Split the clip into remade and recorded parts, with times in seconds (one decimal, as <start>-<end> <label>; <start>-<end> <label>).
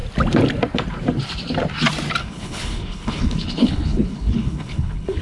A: 0.0-2.2 recorded; 2.2-5.2 remade